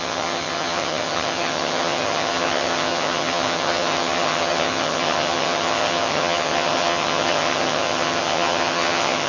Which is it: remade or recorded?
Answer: remade